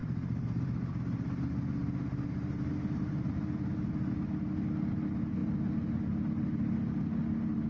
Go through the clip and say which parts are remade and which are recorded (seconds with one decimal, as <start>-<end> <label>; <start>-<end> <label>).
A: 0.0-1.0 remade; 1.0-7.7 recorded